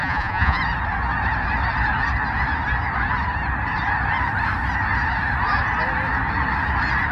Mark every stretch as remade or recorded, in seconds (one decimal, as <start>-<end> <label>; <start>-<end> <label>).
0.0-0.6 remade; 0.6-7.1 recorded